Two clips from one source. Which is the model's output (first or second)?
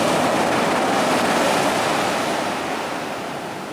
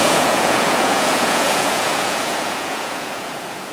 second